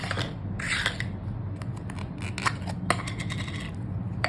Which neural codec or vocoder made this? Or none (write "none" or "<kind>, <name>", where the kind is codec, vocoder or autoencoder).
none